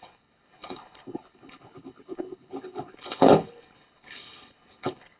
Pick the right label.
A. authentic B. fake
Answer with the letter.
B